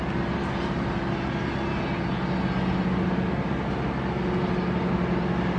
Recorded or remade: recorded